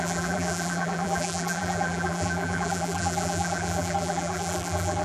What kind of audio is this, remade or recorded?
remade